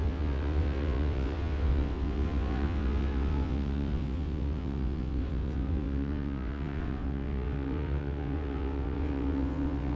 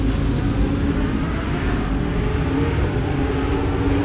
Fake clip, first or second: first